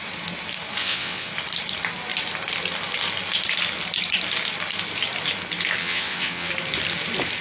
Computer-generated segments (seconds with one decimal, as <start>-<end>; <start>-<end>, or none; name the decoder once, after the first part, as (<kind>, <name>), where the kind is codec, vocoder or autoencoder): 0.8-1.3 (vocoder, WaveNeXt); 5.8-6.5